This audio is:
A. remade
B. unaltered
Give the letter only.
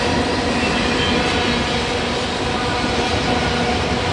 B